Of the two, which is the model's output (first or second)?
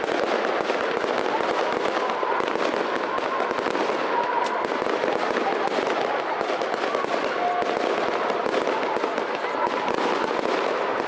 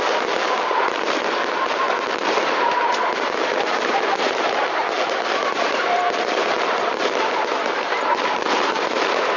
second